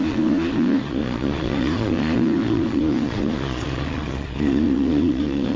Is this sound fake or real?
fake